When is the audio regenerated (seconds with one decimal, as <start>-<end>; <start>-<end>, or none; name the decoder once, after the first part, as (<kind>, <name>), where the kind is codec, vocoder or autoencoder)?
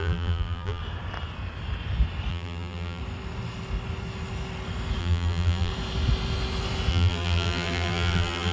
0.0-0.8 (vocoder, BigVGAN v2); 2.3-3.0; 5.0-5.7; 6.9-8.5